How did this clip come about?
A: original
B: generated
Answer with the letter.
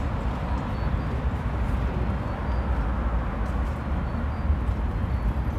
A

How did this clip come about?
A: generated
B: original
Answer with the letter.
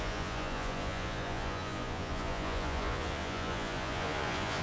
A